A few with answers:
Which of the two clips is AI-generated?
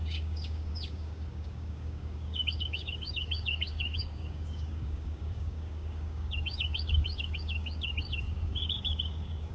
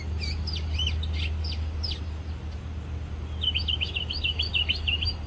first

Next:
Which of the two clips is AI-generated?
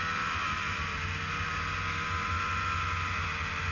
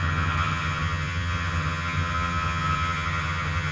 second